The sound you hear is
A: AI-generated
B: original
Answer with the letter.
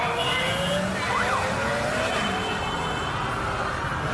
B